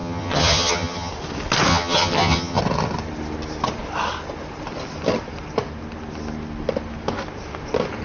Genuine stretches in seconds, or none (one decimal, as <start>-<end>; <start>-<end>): 1.1-1.7; 2.6-8.0